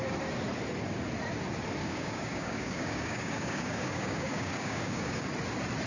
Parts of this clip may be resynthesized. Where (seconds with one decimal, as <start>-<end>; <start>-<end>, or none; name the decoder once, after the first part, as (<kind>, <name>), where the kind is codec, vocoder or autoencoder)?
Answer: 1.8-5.3 (codec, DAC)

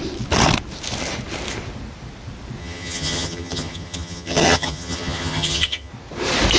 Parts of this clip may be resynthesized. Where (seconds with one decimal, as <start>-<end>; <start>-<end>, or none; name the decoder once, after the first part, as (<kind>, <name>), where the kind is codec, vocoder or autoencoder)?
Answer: 2.6-5.9 (vocoder, HiFi-GAN)

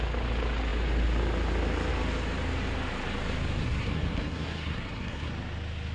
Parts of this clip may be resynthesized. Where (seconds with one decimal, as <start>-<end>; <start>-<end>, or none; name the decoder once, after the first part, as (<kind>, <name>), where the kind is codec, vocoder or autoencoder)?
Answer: 3.6-5.3 (codec, SNAC)